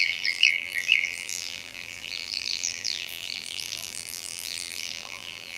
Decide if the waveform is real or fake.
fake